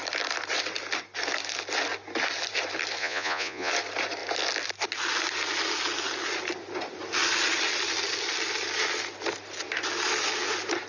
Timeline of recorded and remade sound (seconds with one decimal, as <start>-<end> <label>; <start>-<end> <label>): 0.0-3.0 recorded; 3.0-3.7 remade; 3.7-10.9 recorded